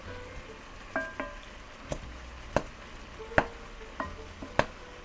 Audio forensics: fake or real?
real